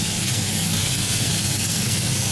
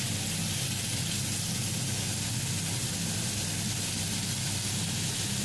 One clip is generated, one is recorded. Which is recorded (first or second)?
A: second